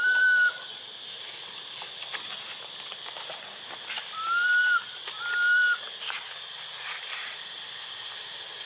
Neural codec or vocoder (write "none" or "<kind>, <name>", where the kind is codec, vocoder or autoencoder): none